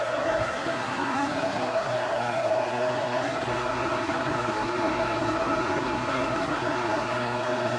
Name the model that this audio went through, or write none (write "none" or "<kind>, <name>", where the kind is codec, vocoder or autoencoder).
codec, SNAC